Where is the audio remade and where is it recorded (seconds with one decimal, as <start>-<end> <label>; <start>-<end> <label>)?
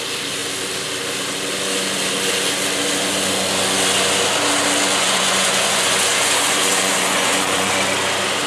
0.0-5.0 recorded; 5.0-7.7 remade; 7.7-8.5 recorded